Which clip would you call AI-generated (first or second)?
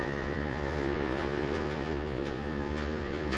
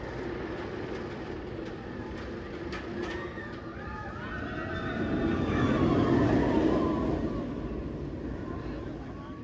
first